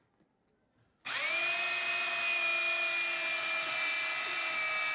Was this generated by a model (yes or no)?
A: no